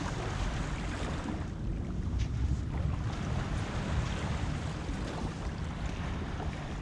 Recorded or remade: remade